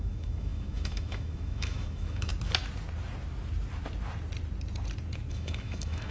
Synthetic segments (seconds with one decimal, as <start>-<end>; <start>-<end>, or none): 0.0-2.3; 5.3-6.1